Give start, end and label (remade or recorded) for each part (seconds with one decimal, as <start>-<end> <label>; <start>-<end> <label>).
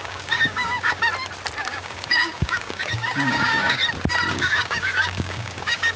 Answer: 0.0-1.1 remade; 1.1-1.6 recorded; 1.6-3.8 remade; 3.8-4.3 recorded; 4.3-6.0 remade